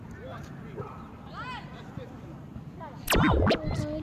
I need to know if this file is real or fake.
real